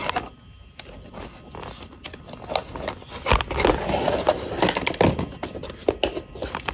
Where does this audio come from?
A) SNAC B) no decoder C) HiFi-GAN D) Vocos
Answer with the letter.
B